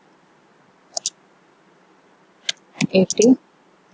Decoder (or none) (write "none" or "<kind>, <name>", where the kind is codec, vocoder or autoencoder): none